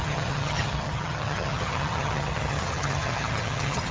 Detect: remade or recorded remade